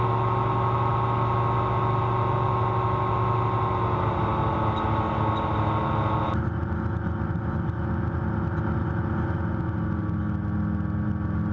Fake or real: real